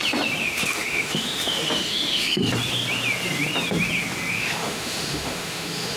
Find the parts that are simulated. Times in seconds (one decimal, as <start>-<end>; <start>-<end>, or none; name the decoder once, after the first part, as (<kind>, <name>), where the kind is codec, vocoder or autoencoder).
0.4-2.5 (autoencoder, DAC-VAE); 4.4-6.0